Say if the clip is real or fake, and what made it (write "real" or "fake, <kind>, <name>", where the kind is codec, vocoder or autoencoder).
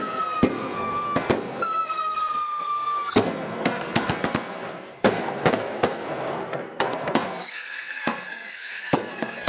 fake, codec, SNAC